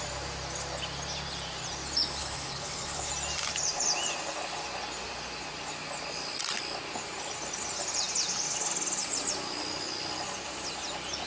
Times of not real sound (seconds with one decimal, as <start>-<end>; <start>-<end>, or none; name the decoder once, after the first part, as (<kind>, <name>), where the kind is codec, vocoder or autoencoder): 2.2-3.1 (codec, HILCodec)